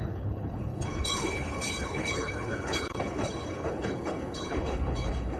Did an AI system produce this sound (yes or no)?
yes